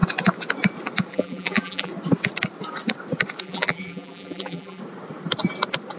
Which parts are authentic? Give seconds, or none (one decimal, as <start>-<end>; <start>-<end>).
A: 0.0-1.1; 1.9-3.4; 4.8-6.0